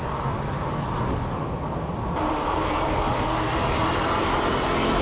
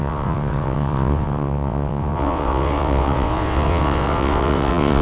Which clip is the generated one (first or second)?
second